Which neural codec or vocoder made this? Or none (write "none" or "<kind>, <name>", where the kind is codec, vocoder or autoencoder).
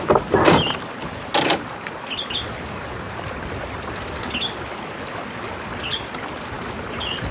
none